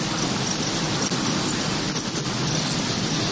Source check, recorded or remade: recorded